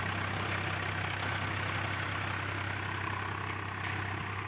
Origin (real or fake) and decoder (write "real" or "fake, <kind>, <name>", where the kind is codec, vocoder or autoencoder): real